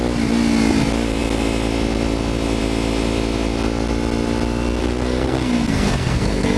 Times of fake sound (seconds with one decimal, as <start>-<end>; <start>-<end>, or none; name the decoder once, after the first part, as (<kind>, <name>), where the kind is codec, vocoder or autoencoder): 4.8-6.6 (codec, SNAC)